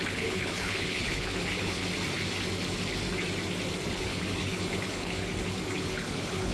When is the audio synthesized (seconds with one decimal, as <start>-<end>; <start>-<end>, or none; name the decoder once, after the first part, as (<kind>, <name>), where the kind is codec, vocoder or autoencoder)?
0.0-1.8 (codec, HILCodec); 3.9-5.2; 5.7-6.5